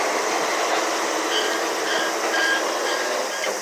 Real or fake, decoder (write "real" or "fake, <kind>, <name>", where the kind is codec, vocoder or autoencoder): fake, vocoder, BigVGAN v2